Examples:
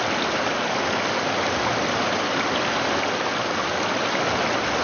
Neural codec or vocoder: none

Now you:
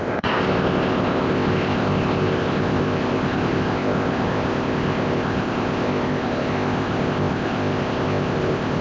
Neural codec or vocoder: codec, ZipCodec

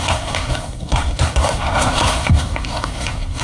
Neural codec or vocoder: codec, SNAC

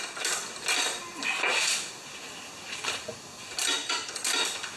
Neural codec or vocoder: none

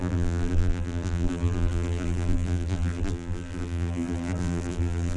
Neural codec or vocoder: vocoder, BigVGAN v2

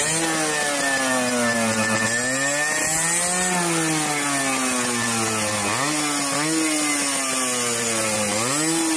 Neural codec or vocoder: none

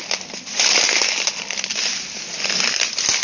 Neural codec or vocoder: none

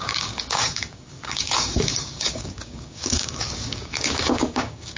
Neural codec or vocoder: codec, DAC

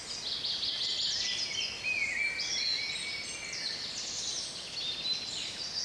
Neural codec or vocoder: none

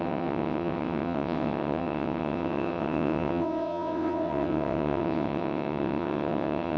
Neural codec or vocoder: vocoder, WaveNeXt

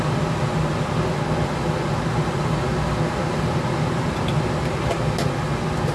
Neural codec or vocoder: none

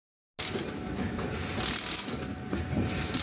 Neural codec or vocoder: none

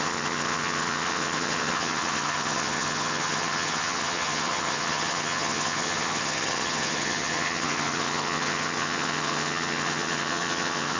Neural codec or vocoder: vocoder, HiFi-GAN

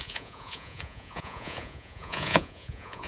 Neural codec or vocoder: vocoder, Vocos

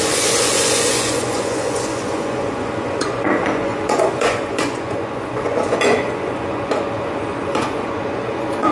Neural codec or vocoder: vocoder, Vocos